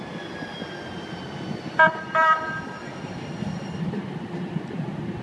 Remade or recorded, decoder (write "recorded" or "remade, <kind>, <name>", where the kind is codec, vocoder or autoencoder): remade, vocoder, BigVGAN v2